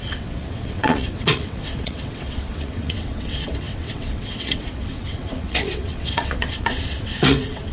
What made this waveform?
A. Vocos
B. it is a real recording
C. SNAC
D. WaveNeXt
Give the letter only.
D